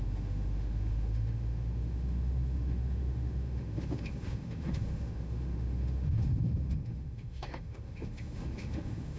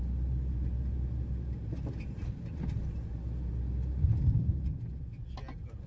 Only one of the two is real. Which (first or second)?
second